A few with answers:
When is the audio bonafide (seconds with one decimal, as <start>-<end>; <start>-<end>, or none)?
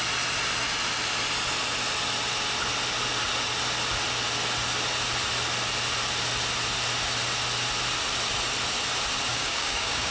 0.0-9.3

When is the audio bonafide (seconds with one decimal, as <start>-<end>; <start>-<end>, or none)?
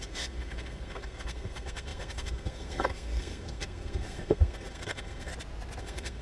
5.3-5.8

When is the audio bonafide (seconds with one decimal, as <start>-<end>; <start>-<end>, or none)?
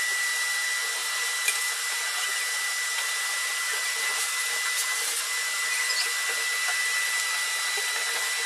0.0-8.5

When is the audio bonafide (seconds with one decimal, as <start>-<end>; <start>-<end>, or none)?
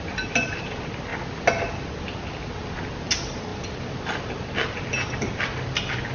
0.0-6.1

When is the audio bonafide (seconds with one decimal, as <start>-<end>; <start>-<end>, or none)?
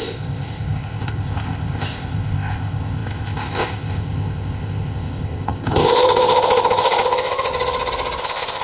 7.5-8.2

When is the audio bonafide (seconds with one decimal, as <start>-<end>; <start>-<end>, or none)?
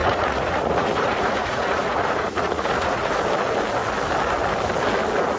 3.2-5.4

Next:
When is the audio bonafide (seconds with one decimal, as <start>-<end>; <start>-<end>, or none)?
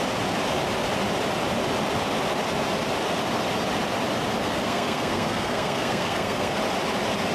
0.0-4.4; 6.6-7.3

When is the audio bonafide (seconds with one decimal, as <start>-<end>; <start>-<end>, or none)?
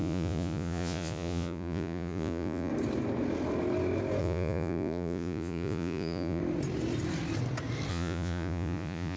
2.7-4.2; 6.4-7.9